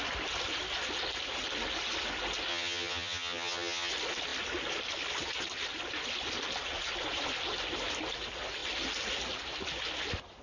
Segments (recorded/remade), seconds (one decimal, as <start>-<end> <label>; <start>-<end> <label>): 0.0-2.5 recorded; 2.5-3.9 remade; 3.9-10.4 recorded